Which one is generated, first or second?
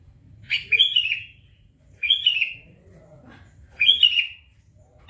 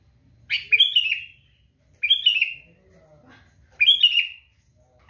first